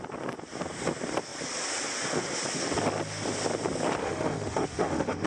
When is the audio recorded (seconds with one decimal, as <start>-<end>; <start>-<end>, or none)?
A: 0.0-4.0

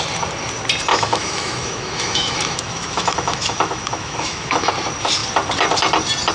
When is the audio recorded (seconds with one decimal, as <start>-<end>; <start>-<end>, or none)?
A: 0.0-0.9; 4.7-6.3

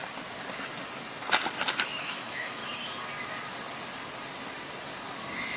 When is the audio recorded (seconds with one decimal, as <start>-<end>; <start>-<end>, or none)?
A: 0.0-2.0; 2.6-5.6

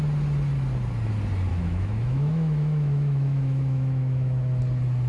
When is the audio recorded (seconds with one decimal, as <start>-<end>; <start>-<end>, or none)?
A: 0.0-1.5; 4.6-5.1

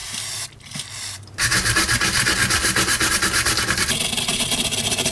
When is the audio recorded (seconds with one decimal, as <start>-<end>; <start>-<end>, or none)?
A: 0.0-5.1

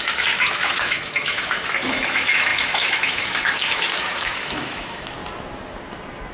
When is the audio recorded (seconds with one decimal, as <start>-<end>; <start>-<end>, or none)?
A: 5.2-6.3

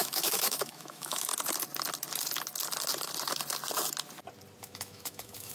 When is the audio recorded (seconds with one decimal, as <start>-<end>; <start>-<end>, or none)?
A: 1.3-4.6